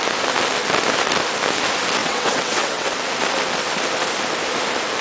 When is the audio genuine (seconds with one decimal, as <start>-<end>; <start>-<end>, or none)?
0.0-2.0; 2.9-5.0